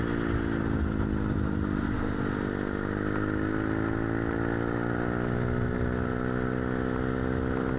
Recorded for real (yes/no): yes